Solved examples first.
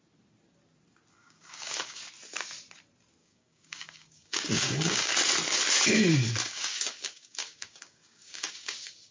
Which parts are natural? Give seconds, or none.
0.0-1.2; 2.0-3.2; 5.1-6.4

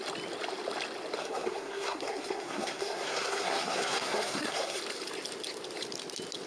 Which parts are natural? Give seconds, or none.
0.0-1.2; 4.8-6.5

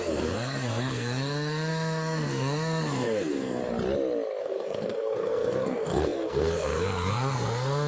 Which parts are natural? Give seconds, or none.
3.6-4.4

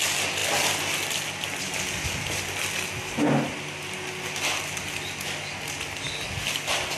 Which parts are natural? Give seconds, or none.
0.0-7.0

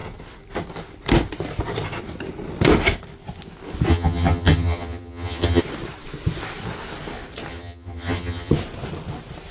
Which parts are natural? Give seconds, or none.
0.0-3.9; 5.6-7.5; 8.5-9.5

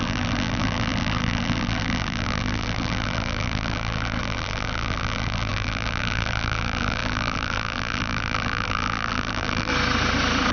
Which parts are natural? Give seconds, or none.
9.7-10.5